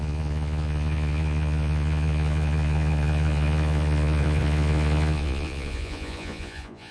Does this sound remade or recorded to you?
remade